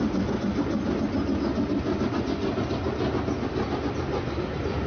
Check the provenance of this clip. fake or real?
real